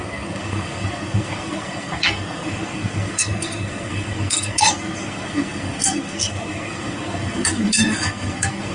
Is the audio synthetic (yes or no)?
yes